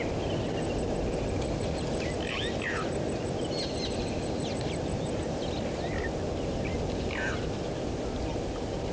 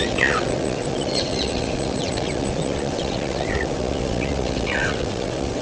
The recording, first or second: first